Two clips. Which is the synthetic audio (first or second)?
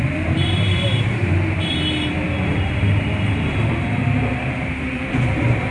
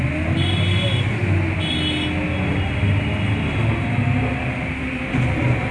first